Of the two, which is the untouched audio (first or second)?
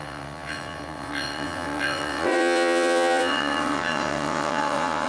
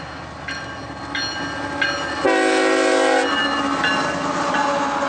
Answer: second